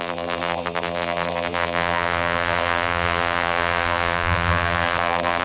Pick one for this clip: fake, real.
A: fake